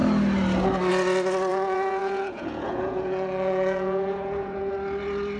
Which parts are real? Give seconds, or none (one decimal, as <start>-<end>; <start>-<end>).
0.0-1.5; 4.7-5.4